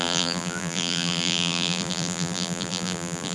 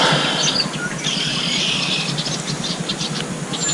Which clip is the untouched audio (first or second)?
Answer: second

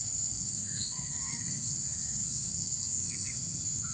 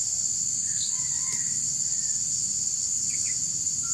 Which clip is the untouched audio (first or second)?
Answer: second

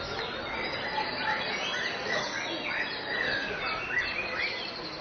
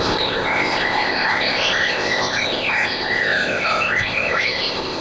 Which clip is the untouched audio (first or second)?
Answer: first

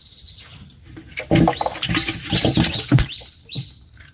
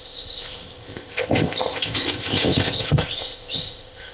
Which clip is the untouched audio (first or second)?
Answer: first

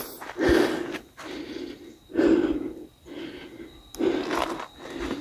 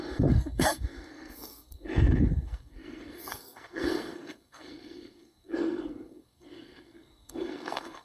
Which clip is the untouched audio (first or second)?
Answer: first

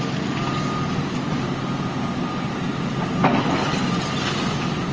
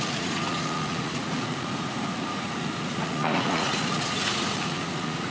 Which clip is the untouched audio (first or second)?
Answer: first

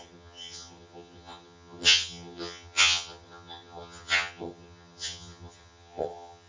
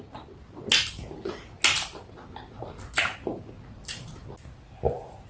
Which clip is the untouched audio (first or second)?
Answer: second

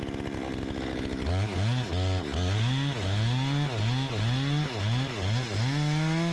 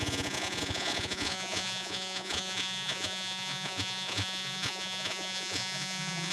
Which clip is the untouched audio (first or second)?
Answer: first